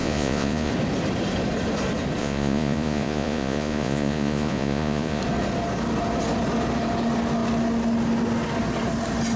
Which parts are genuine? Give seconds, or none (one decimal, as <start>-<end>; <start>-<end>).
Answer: 0.7-2.2; 5.2-9.4